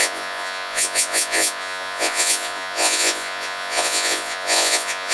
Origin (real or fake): fake